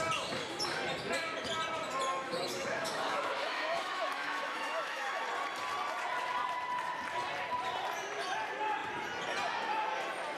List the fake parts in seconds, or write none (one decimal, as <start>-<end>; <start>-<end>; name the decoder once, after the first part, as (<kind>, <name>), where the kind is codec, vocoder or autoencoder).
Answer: 2.1-5.2 (autoencoder, DAC-VAE)